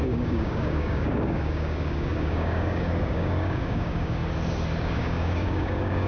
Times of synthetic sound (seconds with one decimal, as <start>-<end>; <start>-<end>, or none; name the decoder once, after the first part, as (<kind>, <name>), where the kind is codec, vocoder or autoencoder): 0.0-4.2 (codec, DAC); 4.8-6.1